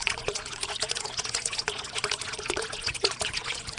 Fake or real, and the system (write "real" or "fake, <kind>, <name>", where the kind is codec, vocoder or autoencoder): fake, vocoder, Vocos